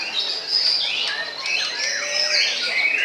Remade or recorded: recorded